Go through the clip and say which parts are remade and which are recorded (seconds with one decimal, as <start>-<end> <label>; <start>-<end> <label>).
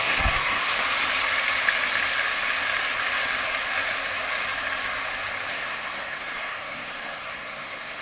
0.0-0.7 remade; 0.7-5.5 recorded; 5.5-8.0 remade